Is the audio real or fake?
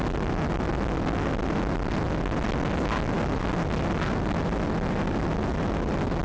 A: real